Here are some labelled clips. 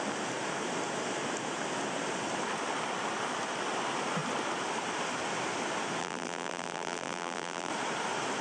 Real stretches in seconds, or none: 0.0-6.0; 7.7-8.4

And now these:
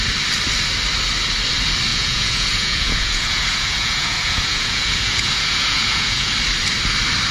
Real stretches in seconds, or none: 0.0-1.9; 6.3-7.3

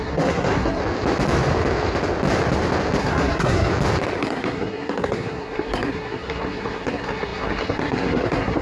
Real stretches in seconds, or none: 0.8-3.0; 3.7-4.2

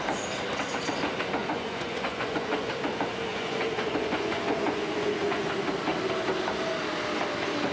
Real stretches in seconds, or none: 0.0-1.4; 2.7-3.3; 5.5-7.7

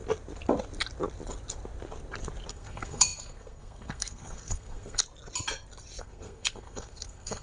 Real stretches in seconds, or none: 0.0-2.5; 5.0-6.0

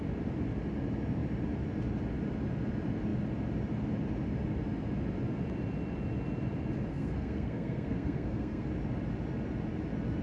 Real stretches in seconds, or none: 0.0-6.9; 8.7-10.2

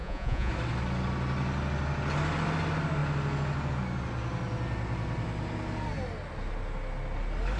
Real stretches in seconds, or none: 0.5-7.6

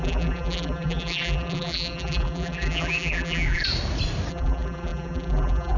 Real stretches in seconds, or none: 3.6-4.3